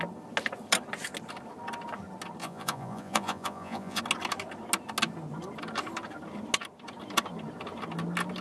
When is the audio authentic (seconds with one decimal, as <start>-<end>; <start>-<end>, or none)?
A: 0.0-2.4; 4.0-8.4